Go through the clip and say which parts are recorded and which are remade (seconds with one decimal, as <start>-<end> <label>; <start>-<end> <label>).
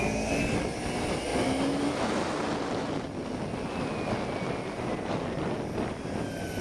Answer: 0.0-6.6 recorded